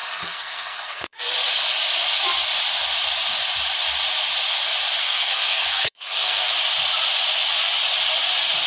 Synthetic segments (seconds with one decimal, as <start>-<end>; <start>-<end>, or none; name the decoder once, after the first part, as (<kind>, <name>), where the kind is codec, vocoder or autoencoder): 0.0-1.2 (codec, SNAC); 5.0-6.5